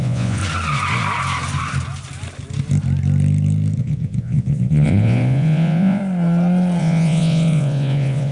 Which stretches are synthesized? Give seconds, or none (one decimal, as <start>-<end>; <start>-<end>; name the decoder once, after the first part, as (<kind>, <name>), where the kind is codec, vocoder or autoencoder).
0.0-0.4 (vocoder, Vocos); 3.8-6.0; 6.8-8.3